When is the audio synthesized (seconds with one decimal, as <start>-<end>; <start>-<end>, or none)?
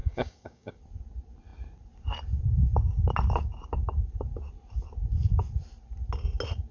0.0-0.8